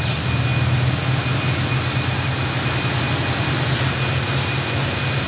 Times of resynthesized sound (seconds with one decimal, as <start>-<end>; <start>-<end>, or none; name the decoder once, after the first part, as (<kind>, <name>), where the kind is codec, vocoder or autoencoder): none